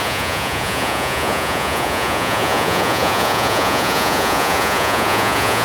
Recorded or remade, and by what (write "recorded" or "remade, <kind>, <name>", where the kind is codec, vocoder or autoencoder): remade, vocoder, Vocos